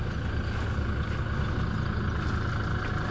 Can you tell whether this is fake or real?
real